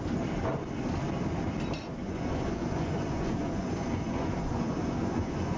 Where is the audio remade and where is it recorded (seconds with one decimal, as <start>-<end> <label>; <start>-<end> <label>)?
0.0-2.0 recorded; 2.0-5.6 remade